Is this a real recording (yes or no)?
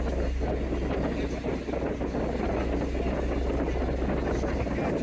yes